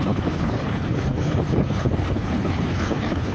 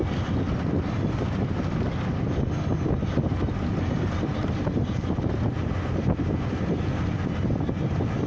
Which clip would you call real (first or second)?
second